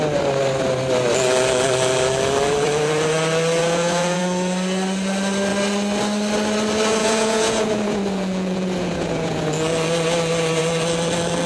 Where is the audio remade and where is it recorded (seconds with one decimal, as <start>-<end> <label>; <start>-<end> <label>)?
0.0-3.6 recorded; 3.6-4.2 remade; 4.2-7.0 recorded; 7.0-9.5 remade; 9.5-11.5 recorded

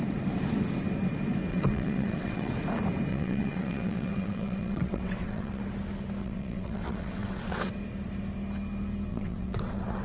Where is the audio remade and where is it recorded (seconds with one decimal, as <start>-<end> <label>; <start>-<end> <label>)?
0.0-1.5 recorded; 1.5-2.5 remade; 2.5-3.1 recorded; 3.1-5.6 remade; 5.6-6.2 recorded; 6.2-7.7 remade; 7.7-9.1 recorded; 9.1-10.0 remade

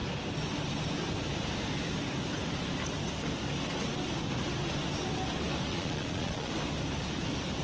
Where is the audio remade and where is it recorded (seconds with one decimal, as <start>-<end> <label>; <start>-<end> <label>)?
0.0-5.7 recorded; 5.7-6.5 remade; 6.5-7.6 recorded

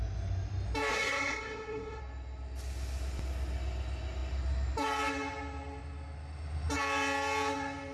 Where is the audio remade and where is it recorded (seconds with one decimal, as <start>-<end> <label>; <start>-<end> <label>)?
0.0-0.9 recorded; 0.9-2.0 remade; 2.0-7.9 recorded

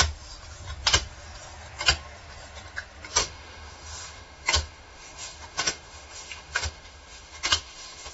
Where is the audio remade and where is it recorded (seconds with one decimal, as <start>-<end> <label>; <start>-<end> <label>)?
0.0-3.2 recorded; 3.2-8.1 remade